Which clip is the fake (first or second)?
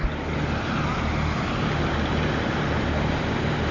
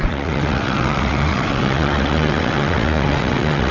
second